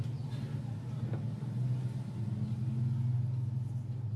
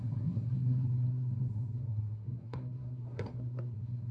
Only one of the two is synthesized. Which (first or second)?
second